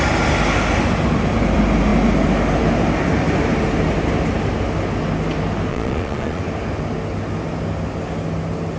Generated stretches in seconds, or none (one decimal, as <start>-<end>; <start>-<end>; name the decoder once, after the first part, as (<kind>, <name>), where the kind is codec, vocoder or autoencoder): 5.7-6.4 (vocoder, Vocos)

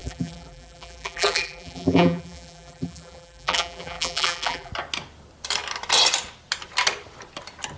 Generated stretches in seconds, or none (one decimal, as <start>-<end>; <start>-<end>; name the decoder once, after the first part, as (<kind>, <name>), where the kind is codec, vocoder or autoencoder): 0.0-4.7 (vocoder, BigVGAN v2)

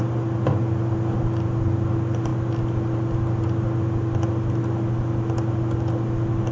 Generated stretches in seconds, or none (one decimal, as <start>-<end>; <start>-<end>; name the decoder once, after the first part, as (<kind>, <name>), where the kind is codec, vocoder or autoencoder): none

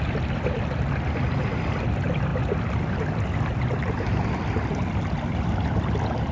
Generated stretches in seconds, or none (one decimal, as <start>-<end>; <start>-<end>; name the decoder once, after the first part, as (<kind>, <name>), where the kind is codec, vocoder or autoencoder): none

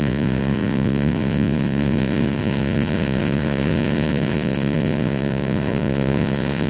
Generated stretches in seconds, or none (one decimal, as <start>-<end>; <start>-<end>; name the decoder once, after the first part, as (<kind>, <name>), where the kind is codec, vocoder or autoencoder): 0.0-6.7 (vocoder, Vocos)

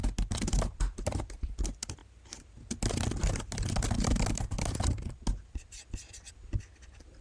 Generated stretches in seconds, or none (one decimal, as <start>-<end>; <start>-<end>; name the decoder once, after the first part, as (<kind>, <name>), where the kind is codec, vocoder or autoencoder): none

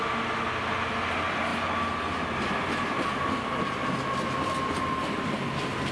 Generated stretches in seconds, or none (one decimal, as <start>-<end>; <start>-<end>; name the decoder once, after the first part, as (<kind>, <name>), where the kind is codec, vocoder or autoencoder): none